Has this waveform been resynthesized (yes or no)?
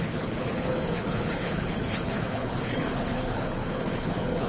yes